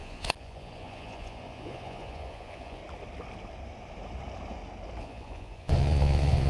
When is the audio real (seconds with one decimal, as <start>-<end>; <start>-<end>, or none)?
2.8-5.0